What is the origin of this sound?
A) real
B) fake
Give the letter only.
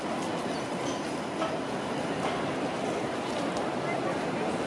A